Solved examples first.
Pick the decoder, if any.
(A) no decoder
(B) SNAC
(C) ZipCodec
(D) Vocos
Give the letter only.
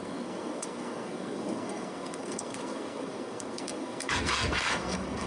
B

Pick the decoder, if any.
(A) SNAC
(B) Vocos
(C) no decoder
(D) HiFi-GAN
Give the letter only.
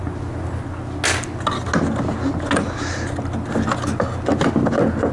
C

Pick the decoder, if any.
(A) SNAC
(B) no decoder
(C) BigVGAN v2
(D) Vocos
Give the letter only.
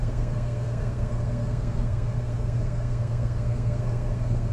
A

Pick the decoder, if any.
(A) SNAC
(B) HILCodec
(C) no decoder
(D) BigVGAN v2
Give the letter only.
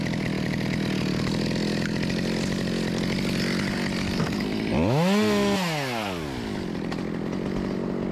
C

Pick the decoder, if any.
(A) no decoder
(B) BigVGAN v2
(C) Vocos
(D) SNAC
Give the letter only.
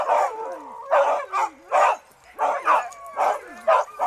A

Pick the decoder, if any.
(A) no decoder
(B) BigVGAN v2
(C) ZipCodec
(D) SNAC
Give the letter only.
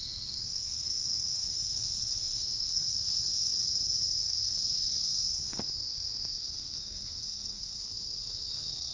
D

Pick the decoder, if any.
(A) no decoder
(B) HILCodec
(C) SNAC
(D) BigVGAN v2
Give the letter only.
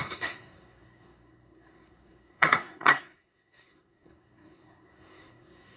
C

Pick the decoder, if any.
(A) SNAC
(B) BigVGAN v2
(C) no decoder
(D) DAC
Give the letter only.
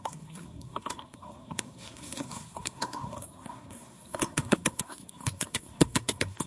A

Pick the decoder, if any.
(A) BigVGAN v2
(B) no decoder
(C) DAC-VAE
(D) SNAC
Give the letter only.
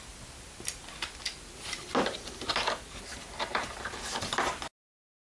B